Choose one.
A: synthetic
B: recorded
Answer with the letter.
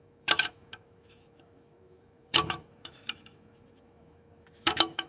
A